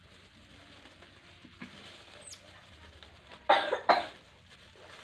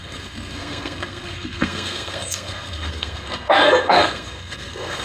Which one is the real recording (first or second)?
first